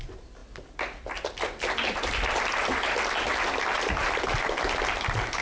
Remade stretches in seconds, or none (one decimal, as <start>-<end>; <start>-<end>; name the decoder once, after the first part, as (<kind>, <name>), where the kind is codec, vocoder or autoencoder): none